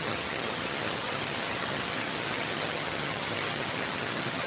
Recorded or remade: remade